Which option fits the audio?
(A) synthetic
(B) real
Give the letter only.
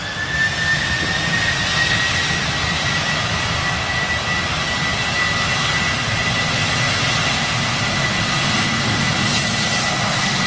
B